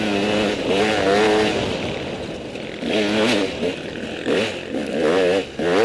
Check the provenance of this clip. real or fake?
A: real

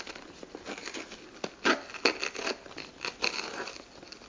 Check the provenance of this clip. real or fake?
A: real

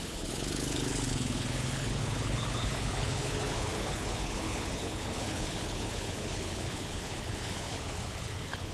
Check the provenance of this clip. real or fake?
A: fake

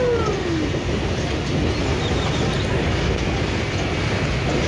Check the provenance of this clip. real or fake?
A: real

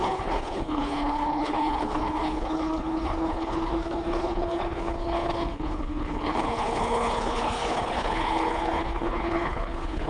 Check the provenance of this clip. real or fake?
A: fake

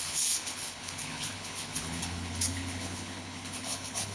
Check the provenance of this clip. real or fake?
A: fake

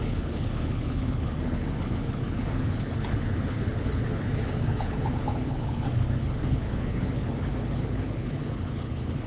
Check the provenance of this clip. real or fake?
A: fake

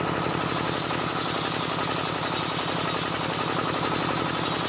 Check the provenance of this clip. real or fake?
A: real